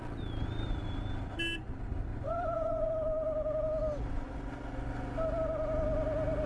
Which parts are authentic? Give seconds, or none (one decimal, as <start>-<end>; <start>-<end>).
0.0-2.1; 2.9-6.5